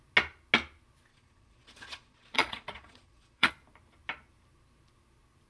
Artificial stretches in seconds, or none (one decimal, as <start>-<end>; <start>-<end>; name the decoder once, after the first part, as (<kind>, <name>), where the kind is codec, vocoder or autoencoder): 1.1-3.5 (vocoder, Vocos)